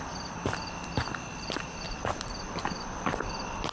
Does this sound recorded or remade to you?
remade